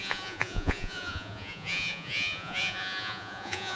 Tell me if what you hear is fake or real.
fake